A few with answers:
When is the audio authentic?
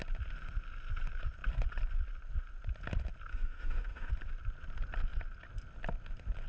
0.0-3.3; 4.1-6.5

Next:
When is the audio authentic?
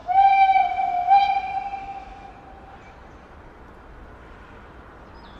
0.6-1.8; 2.3-5.4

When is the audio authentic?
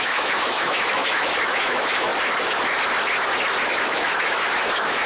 2.1-3.7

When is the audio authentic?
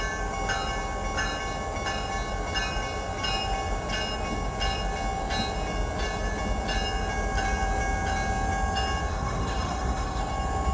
0.0-9.1; 10.2-10.7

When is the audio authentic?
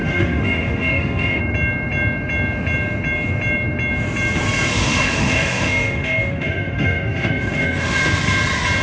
1.4-4.7; 8.0-8.8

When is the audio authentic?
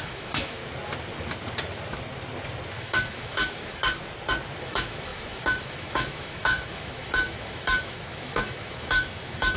0.6-2.7; 3.8-4.6